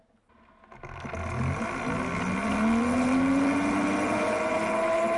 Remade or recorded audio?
recorded